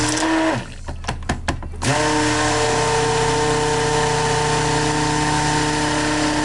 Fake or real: real